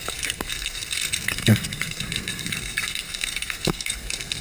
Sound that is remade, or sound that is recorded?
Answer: remade